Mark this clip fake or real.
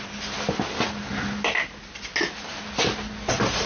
real